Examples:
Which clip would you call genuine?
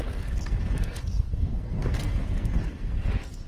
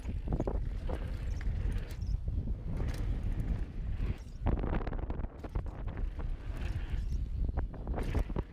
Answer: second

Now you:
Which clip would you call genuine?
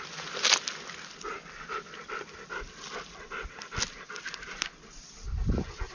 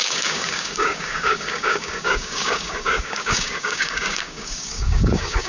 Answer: first